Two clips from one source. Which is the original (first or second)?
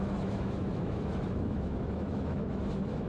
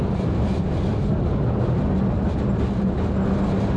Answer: second